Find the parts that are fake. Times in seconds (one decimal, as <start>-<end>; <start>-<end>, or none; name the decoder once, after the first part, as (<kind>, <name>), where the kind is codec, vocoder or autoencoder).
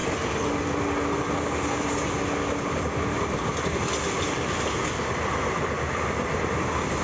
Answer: none